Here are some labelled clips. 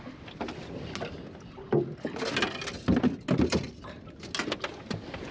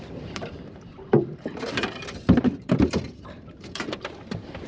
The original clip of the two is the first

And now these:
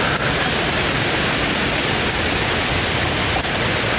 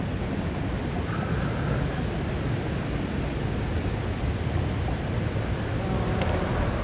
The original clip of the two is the second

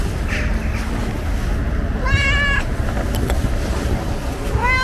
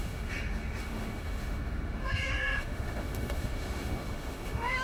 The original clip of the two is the first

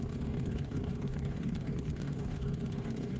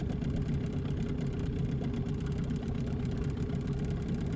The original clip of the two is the second